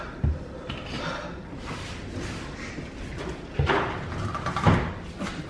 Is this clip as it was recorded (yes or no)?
yes